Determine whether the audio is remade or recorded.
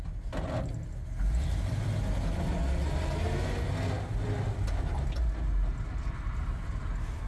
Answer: recorded